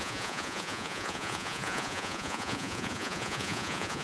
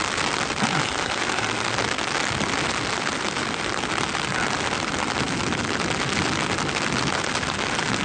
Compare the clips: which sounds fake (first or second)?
first